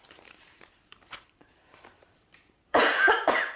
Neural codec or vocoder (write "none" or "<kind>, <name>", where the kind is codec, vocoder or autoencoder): vocoder, BigVGAN v2